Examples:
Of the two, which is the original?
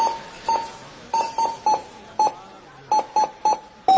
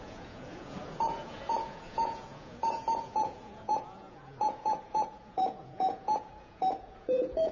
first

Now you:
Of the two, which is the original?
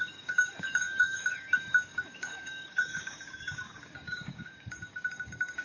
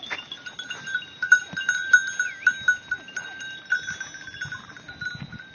second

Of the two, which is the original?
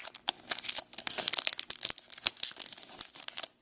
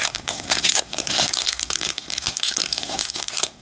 first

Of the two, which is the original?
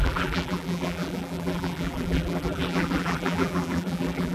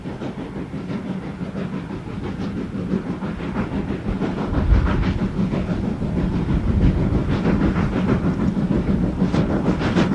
second